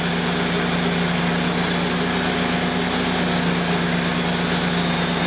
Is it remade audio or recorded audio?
recorded